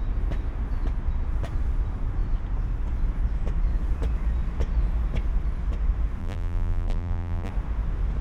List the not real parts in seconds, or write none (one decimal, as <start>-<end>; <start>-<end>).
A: 6.2-7.5